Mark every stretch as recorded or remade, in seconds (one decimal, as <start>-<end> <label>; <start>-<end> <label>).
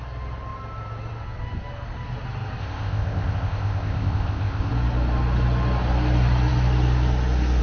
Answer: 0.0-2.6 recorded; 2.6-4.7 remade; 4.7-7.6 recorded